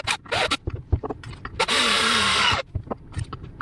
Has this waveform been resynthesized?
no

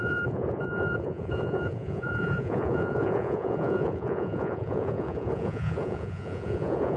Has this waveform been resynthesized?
yes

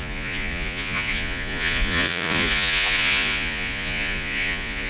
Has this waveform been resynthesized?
yes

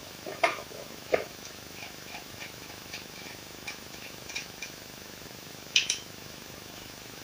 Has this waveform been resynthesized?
yes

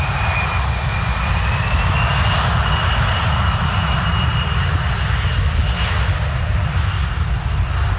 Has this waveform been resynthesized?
no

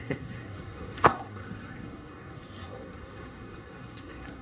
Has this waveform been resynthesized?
yes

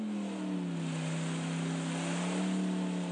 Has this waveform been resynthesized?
no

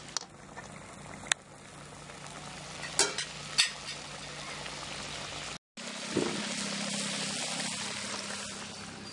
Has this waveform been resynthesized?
no